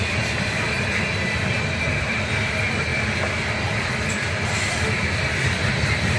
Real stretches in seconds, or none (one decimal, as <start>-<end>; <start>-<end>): 0.0-6.2